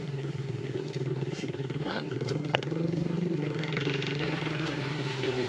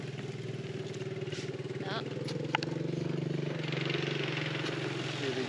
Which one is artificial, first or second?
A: first